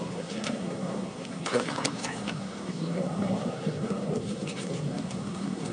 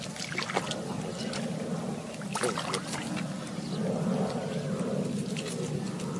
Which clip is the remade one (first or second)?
first